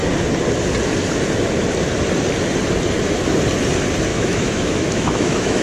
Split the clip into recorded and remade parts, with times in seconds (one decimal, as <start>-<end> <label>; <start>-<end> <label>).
0.0-4.1 recorded; 4.1-5.6 remade